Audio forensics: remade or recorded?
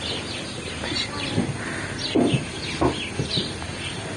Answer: recorded